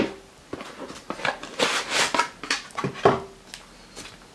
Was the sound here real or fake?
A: real